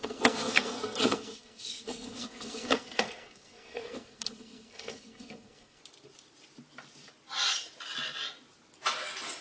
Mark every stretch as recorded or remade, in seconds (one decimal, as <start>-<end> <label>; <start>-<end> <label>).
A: 0.0-5.8 remade; 5.8-9.4 recorded